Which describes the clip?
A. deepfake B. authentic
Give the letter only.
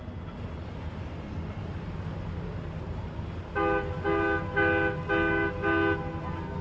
B